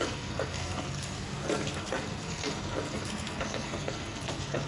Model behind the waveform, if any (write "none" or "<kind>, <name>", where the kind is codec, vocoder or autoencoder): codec, SNAC